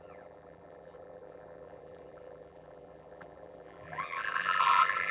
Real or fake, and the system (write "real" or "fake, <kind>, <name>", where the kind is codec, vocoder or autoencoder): fake, vocoder, BigVGAN v2